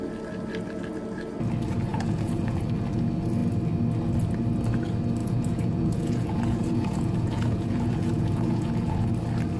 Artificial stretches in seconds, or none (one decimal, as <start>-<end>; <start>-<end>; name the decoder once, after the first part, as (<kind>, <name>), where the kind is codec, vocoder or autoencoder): 1.9-2.6 (vocoder, Vocos); 5.2-9.1